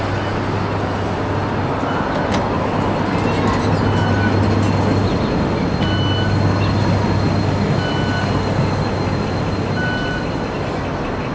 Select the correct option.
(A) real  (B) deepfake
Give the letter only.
A